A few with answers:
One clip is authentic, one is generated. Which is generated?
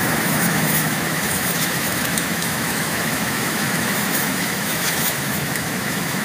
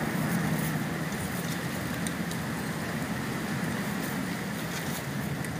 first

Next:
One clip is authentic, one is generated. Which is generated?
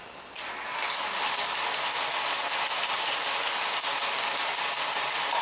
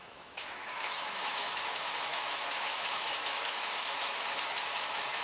second